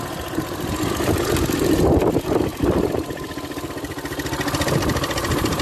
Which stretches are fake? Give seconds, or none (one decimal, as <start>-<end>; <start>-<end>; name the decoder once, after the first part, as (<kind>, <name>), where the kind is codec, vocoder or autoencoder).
none